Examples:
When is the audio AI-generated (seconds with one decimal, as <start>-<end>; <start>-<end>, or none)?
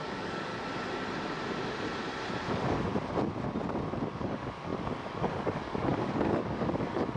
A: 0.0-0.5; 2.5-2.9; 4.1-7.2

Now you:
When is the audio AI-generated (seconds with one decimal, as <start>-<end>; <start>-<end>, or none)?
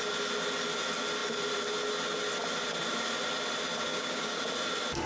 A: 3.9-4.4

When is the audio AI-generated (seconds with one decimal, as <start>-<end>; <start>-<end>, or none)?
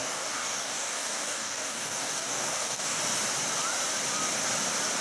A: 0.0-3.0